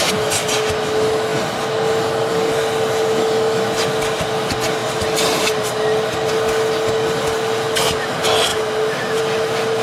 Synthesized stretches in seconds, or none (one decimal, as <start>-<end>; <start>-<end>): none